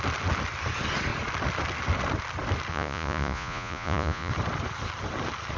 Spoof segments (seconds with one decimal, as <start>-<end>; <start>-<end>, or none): 2.7-4.3